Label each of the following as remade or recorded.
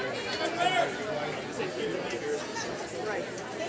recorded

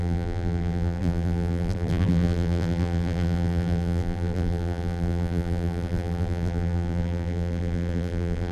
remade